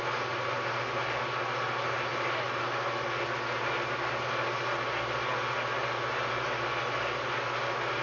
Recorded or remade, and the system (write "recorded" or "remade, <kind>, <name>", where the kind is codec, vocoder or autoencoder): recorded